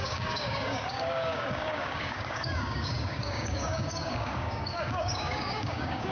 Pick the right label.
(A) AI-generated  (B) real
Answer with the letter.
A